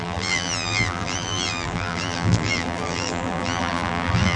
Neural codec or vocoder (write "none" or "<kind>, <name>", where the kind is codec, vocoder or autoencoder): vocoder, BigVGAN v2